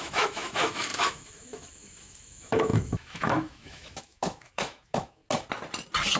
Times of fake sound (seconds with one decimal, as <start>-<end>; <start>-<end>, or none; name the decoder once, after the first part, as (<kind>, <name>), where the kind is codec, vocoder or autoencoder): 0.0-5.2 (autoencoder, DAC-VAE)